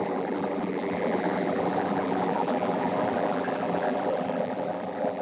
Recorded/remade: remade